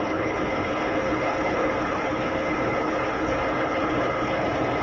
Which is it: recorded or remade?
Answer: remade